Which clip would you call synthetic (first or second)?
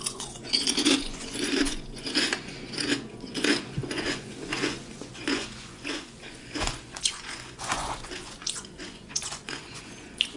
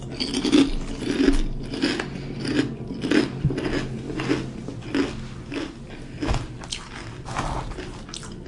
first